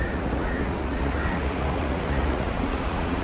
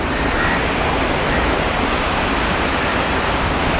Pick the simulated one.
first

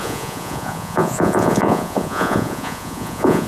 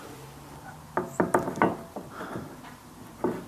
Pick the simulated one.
first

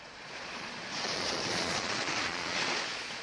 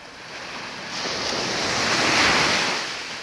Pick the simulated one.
first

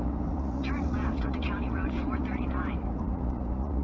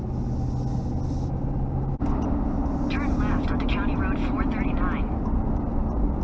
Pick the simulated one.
first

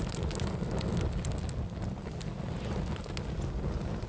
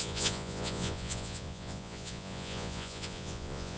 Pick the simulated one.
second